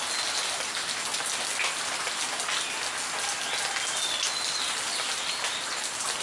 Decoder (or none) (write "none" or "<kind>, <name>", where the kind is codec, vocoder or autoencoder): none